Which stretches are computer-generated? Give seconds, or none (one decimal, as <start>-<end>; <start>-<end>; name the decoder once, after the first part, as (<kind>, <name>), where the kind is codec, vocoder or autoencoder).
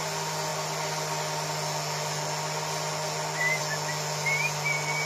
none